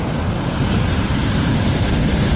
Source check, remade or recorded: remade